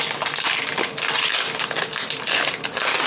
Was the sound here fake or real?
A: real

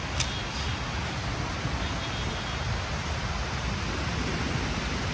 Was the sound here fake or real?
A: real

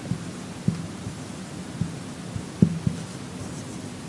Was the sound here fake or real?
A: real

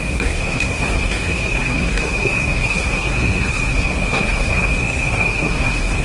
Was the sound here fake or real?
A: fake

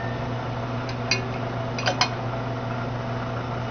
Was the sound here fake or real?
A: real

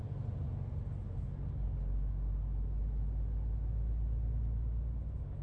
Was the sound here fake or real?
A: real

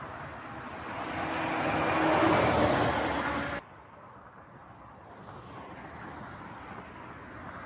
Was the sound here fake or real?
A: real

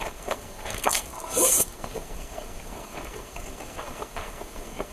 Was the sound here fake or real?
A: fake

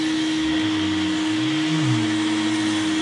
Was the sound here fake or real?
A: real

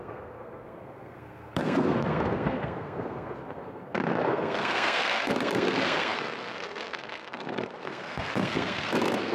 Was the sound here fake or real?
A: fake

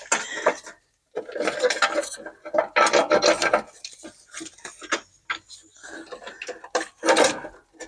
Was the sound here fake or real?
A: real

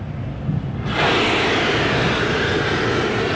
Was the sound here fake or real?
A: real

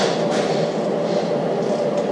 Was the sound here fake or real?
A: real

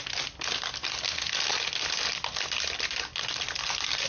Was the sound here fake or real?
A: real